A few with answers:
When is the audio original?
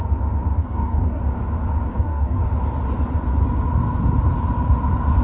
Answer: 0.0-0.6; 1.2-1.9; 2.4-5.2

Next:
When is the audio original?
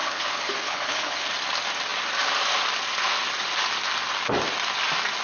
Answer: 1.3-5.2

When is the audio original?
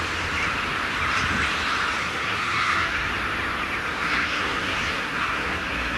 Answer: 0.0-2.0; 3.1-3.9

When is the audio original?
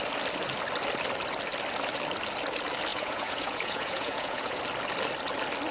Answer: 0.0-2.9; 4.6-5.7